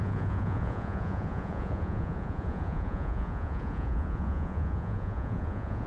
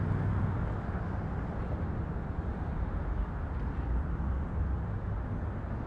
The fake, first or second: first